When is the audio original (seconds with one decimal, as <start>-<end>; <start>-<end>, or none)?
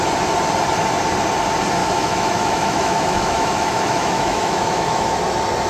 0.0-1.8; 5.2-5.7